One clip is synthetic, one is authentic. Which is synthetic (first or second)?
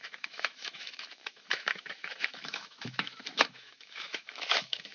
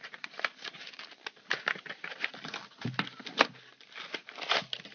first